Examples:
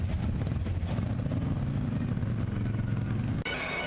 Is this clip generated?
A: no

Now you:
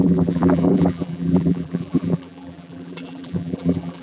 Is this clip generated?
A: yes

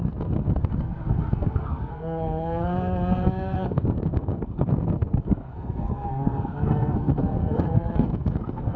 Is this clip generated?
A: yes